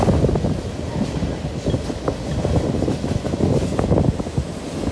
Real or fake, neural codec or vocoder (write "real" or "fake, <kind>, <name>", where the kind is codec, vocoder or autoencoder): real